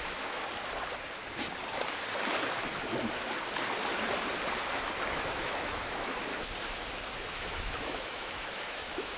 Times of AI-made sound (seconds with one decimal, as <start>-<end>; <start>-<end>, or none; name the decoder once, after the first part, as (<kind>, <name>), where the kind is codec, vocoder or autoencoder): 0.0-0.4 (autoencoder, DAC-VAE); 5.1-6.3; 7.2-9.2